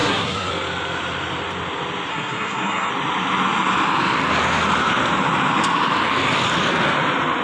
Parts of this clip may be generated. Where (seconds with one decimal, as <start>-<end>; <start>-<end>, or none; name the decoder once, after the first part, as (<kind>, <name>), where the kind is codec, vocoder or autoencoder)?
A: 0.0-0.5 (codec, SNAC); 2.1-2.9